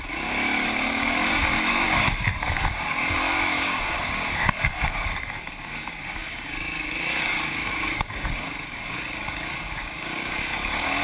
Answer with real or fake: fake